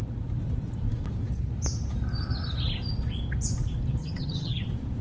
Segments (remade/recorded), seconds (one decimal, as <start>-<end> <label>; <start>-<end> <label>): 0.0-4.0 recorded; 4.0-4.6 remade; 4.6-5.0 recorded